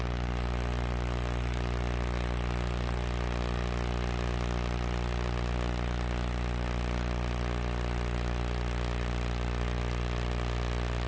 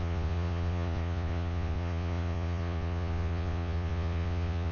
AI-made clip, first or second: second